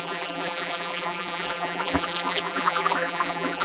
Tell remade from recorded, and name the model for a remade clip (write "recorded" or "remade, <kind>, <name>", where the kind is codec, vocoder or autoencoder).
remade, vocoder, BigVGAN v2